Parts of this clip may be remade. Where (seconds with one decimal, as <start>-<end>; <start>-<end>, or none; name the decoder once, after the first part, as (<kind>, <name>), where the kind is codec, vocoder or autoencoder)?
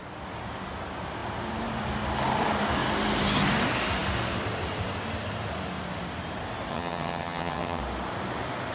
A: 6.7-7.8 (vocoder, HiFi-GAN)